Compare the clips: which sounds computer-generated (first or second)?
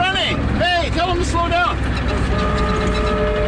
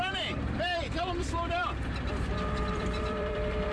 second